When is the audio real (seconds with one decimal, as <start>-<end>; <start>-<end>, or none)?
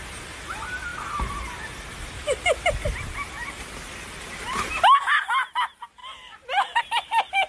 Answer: 0.0-7.5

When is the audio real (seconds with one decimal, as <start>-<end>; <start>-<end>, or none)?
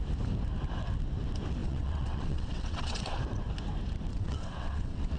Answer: 0.0-1.6; 3.2-4.1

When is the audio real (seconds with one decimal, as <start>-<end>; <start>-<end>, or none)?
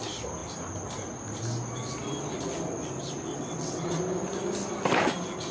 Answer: 0.0-3.3; 4.0-5.5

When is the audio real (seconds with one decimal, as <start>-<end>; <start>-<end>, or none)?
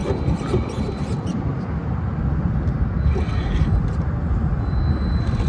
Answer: 0.0-5.5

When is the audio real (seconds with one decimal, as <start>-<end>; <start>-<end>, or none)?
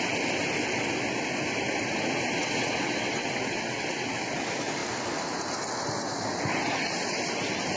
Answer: 0.0-2.4; 4.1-7.8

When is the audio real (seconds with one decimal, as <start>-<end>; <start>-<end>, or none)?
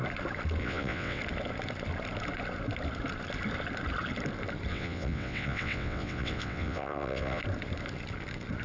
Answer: 0.0-0.6; 1.2-4.7; 7.4-8.6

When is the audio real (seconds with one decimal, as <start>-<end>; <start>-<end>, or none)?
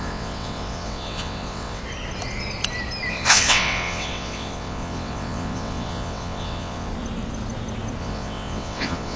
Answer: 1.8-3.1; 6.9-8.0